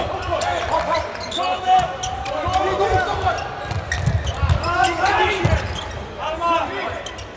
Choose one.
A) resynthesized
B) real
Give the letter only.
B